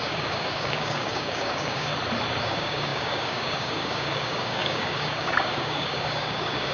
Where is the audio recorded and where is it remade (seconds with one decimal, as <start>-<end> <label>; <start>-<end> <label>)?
0.0-1.9 remade; 1.9-2.4 recorded; 2.4-6.7 remade